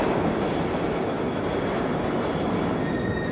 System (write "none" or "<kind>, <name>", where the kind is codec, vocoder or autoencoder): none